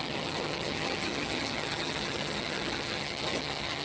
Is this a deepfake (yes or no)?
yes